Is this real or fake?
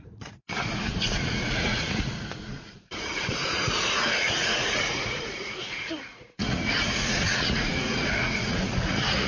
fake